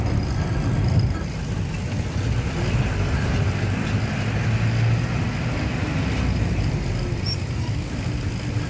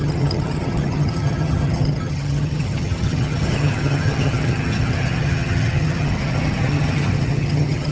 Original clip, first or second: first